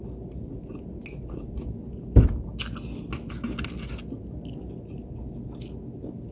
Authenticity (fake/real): real